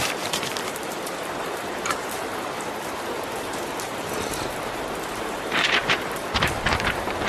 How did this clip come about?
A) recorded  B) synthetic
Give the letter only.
B